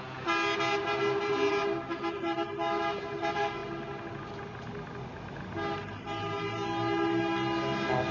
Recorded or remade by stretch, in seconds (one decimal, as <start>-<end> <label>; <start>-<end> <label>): 0.0-8.1 recorded